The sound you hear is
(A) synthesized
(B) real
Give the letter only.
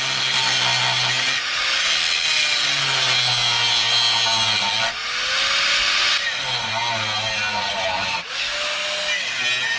B